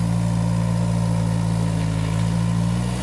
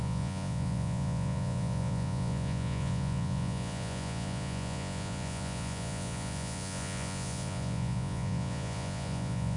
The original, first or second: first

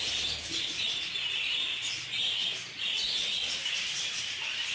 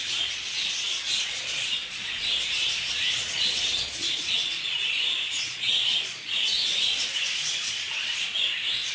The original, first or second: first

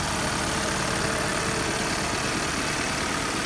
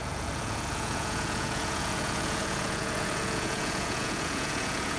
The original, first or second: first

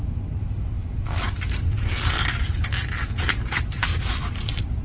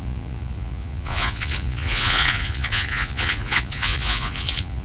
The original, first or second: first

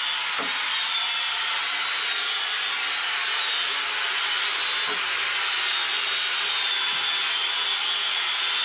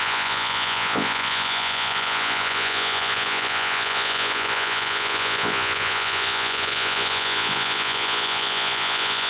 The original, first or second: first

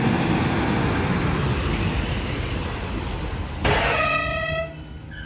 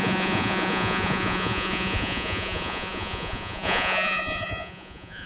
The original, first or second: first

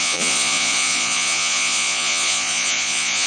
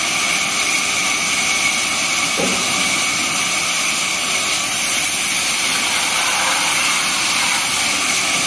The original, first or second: second